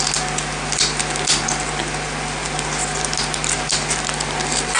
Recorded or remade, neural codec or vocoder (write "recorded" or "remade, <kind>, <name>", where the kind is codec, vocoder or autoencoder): recorded